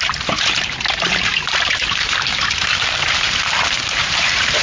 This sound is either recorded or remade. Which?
remade